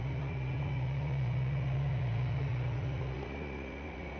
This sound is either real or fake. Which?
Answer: fake